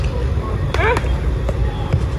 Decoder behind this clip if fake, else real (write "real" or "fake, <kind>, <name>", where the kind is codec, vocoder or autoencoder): real